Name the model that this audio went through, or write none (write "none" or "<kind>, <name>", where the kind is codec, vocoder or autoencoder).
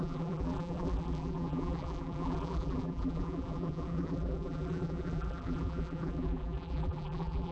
vocoder, BigVGAN v2